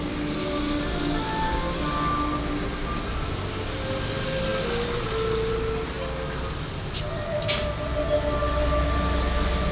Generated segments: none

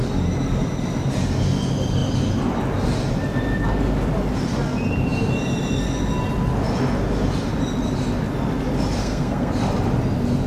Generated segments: 9.0-9.5 (codec, SNAC)

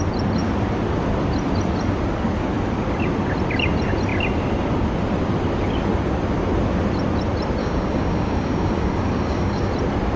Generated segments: 7.6-9.7 (codec, DAC)

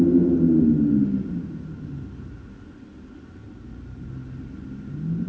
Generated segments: 3.4-4.1 (vocoder, BigVGAN v2)

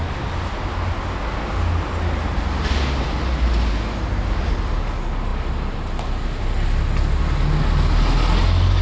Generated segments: none

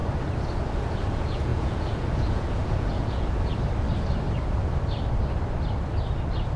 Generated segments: 0.8-3.5 (vocoder, Vocos)

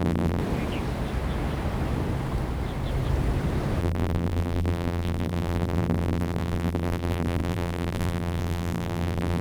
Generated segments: 0.0-0.4 (vocoder, BigVGAN v2); 3.8-9.4

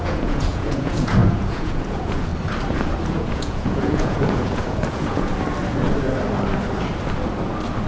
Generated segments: 0.0-2.3 (vocoder, Vocos); 3.1-5.3